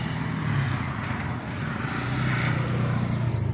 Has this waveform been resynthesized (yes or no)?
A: no